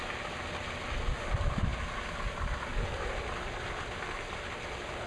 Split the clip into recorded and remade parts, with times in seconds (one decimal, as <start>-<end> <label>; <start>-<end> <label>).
0.0-5.1 recorded